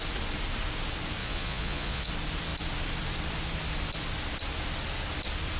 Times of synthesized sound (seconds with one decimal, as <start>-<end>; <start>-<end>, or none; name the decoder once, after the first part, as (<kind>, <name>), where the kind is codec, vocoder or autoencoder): 1.2-2.1 (vocoder, Vocos)